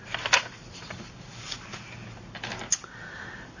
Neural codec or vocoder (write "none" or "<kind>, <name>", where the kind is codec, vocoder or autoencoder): none